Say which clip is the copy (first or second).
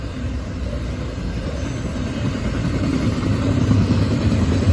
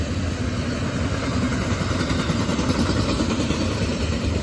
first